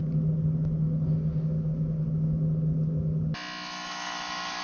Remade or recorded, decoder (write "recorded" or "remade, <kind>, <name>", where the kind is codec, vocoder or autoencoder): recorded